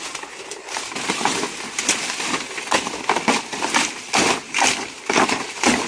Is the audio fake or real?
real